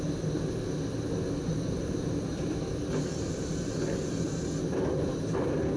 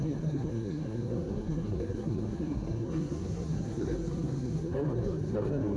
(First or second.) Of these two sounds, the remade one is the second